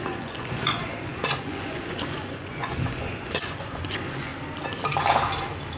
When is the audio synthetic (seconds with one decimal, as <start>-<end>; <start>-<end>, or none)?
0.0-4.3